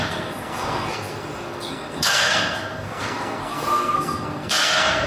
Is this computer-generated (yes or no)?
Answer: yes